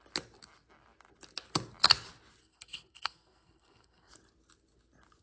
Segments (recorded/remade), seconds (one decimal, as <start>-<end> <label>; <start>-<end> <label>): 0.0-2.4 recorded; 2.4-4.1 remade; 4.1-5.2 recorded